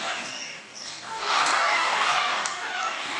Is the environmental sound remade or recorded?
remade